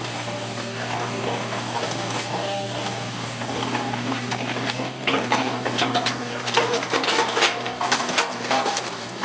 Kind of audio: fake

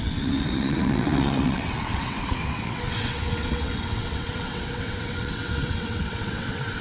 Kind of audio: fake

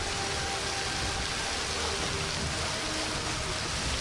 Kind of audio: real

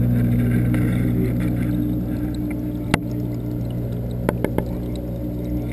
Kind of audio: real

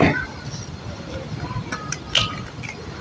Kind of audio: real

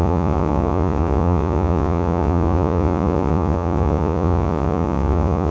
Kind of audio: fake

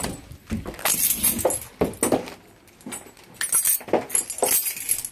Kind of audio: real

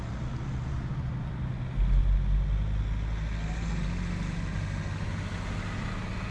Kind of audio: real